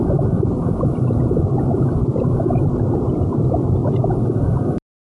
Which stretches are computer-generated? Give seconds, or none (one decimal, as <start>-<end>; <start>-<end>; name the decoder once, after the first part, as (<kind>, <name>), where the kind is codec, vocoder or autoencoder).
none